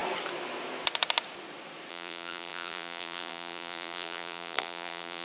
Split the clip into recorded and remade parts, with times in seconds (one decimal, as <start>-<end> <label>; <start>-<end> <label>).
0.0-1.9 recorded; 1.9-5.2 remade